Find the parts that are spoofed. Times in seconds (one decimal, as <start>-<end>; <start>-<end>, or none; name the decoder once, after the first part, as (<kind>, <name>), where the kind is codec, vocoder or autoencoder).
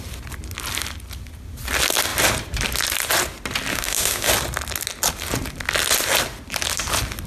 3.7-4.3 (autoencoder, DAC-VAE)